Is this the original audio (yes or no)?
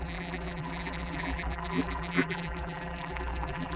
no